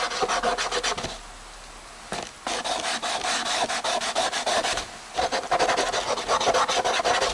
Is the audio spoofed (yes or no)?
no